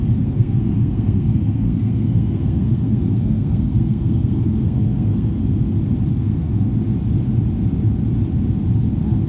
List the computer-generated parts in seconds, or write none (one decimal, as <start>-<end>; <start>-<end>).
0.0-5.4; 6.1-6.7